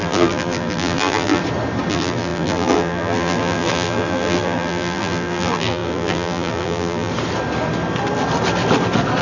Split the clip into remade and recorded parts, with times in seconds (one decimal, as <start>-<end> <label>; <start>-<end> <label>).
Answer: 0.0-1.4 remade; 1.4-1.9 recorded; 1.9-7.1 remade; 7.1-9.2 recorded